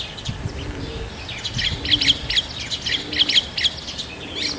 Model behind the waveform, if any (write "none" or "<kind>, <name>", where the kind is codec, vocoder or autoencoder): none